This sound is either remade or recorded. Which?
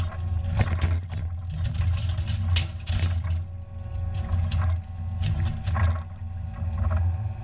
recorded